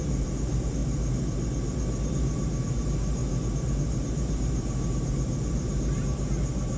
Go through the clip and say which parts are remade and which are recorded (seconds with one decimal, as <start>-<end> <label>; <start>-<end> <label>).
0.0-0.8 remade; 0.8-2.1 recorded; 2.1-3.2 remade; 3.2-3.7 recorded; 3.7-6.8 remade